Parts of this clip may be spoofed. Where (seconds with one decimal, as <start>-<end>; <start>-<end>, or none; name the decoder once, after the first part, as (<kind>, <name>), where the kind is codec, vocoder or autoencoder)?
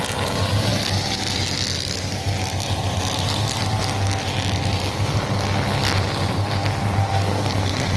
7.0-8.0 (codec, SNAC)